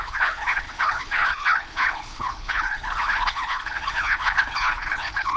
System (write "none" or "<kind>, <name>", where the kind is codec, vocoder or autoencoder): codec, HILCodec